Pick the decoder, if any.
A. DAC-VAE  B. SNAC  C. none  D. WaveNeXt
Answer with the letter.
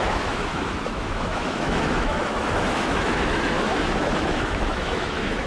A